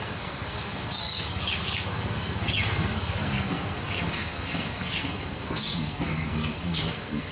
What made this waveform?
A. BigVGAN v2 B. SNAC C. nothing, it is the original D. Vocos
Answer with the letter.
B